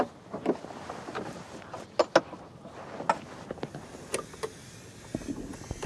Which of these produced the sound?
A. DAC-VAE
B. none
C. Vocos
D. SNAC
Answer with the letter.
B